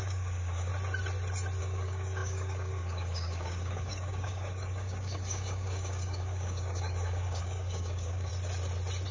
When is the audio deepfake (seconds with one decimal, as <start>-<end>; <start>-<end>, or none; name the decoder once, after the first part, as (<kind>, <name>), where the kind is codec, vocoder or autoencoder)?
0.0-0.7 (codec, DAC); 1.6-8.3